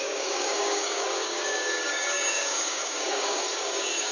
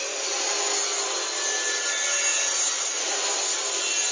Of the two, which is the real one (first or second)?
second